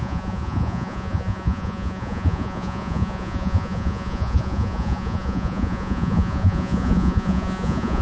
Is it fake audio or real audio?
fake